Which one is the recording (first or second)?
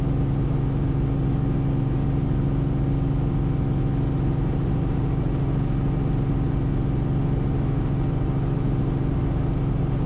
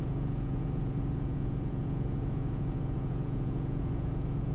first